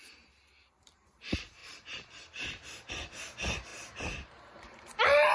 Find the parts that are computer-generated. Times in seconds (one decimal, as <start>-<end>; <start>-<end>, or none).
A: 0.0-5.3